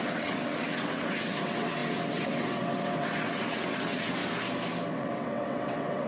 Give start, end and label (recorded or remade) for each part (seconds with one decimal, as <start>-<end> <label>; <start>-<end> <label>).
0.0-4.2 remade; 4.2-4.9 recorded; 4.9-6.1 remade